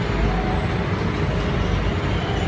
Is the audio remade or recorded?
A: recorded